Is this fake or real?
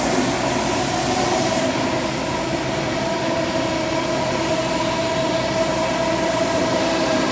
real